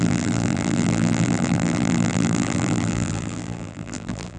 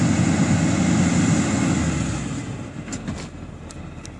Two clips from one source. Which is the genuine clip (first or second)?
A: second